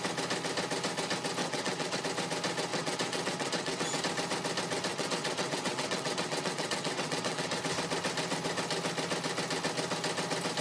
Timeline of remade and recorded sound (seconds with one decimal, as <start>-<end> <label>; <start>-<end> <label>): 0.0-1.4 recorded; 1.4-2.0 remade; 2.0-2.7 recorded; 2.7-4.0 remade; 4.0-4.9 recorded; 4.9-7.6 remade; 7.6-10.6 recorded